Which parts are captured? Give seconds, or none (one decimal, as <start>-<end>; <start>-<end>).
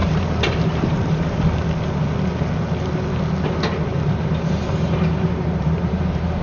1.4-3.9